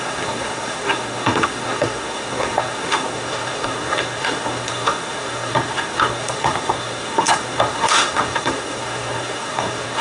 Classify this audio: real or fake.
fake